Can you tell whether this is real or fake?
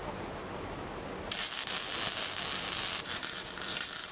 real